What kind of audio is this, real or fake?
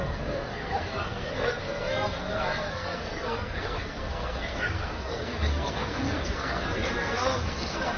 fake